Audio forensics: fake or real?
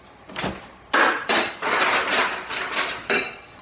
real